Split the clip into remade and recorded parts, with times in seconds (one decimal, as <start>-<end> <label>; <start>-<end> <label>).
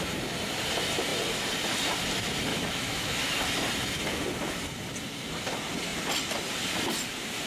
0.0-2.5 recorded; 2.5-3.3 remade; 3.3-7.5 recorded